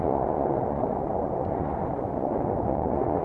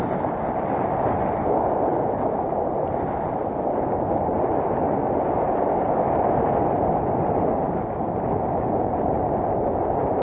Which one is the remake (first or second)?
first